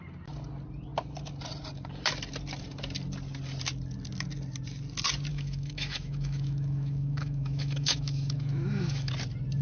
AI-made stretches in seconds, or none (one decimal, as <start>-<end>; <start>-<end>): 5.3-9.1